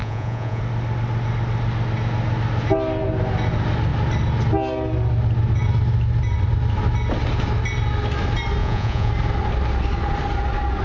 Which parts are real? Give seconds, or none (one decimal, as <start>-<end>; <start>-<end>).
0.6-8.6; 9.1-10.8